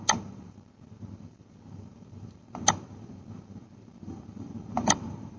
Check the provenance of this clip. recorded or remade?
remade